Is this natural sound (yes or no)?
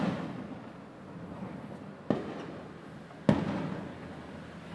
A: yes